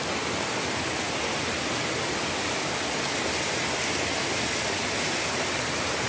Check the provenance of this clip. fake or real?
real